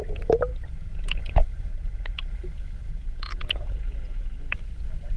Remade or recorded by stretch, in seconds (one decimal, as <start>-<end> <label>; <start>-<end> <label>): 0.0-0.5 recorded; 0.5-1.2 remade; 1.2-1.7 recorded; 1.7-2.3 remade; 2.3-2.9 recorded; 2.9-4.5 remade; 4.5-5.2 recorded